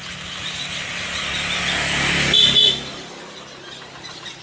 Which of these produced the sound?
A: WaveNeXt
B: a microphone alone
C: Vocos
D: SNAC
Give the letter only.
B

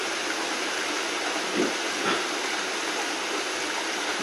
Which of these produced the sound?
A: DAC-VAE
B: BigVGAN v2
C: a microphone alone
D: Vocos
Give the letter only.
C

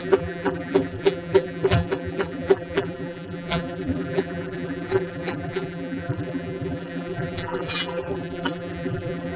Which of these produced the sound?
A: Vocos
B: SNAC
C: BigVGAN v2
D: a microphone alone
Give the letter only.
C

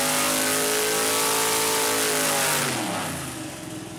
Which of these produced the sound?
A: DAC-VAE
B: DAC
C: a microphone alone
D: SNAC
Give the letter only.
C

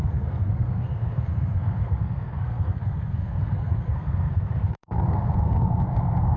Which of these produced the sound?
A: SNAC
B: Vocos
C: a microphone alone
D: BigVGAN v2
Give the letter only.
A